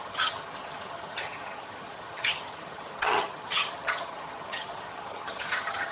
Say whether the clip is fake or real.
fake